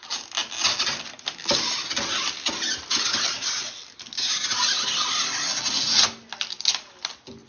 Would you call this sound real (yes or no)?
yes